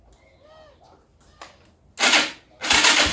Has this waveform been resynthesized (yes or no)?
no